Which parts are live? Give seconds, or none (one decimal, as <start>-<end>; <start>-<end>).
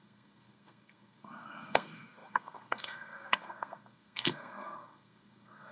none